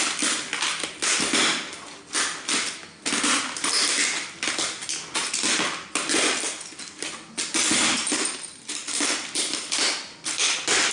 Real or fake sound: real